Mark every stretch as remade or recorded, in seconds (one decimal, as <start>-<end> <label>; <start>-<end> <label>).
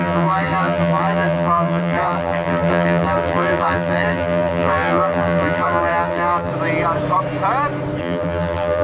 0.0-6.5 remade; 6.5-8.0 recorded; 8.0-8.8 remade